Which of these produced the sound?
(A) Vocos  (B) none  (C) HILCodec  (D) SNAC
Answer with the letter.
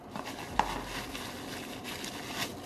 B